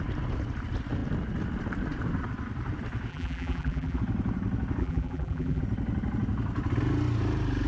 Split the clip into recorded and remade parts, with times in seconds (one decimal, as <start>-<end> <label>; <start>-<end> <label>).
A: 0.0-3.1 recorded; 3.1-4.0 remade; 4.0-4.8 recorded; 4.8-5.6 remade; 5.6-7.7 recorded